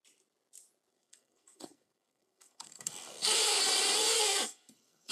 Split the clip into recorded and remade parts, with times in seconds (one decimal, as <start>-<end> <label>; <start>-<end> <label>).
0.0-0.9 recorded; 0.9-3.6 remade; 3.6-4.0 recorded; 4.0-5.1 remade